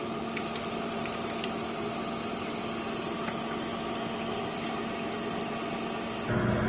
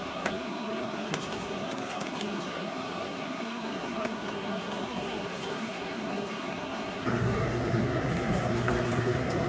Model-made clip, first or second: second